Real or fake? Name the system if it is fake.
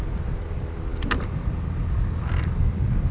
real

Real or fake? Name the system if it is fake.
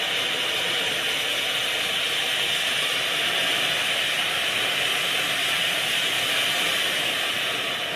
real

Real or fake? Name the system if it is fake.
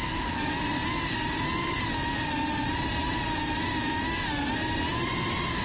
real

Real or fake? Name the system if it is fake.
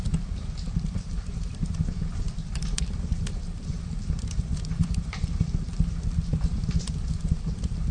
fake, vocoder, BigVGAN v2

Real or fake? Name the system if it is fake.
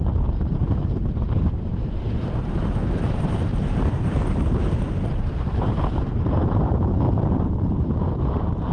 fake, vocoder, BigVGAN v2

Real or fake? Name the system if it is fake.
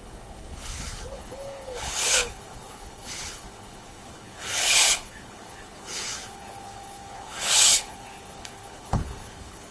fake, codec, HILCodec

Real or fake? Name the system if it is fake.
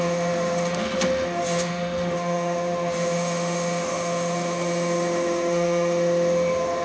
fake, autoencoder, DAC-VAE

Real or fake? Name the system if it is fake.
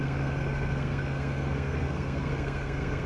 fake, codec, SNAC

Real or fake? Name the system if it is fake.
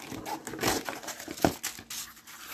real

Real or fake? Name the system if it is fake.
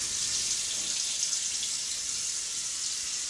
real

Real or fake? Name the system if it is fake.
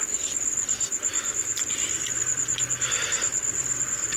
fake, vocoder, BigVGAN v2